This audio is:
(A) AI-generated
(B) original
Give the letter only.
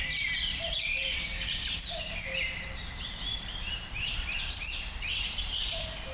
A